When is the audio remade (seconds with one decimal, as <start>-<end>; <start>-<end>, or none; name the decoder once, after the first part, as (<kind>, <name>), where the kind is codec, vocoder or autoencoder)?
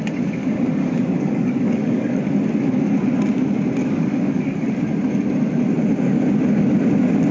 0.4-2.2 (codec, DAC); 3.8-4.7